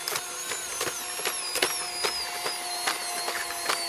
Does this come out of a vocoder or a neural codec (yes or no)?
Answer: no